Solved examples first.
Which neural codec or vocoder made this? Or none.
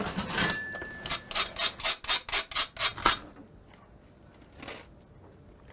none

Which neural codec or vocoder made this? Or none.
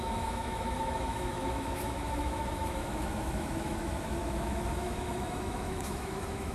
autoencoder, DAC-VAE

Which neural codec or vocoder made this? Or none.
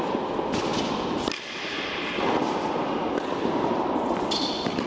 none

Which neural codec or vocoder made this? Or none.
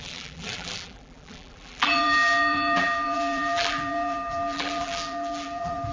vocoder, BigVGAN v2